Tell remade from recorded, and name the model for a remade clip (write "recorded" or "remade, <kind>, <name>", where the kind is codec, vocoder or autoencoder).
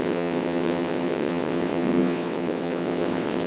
remade, vocoder, WaveNeXt